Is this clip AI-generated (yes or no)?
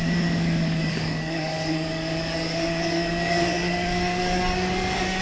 yes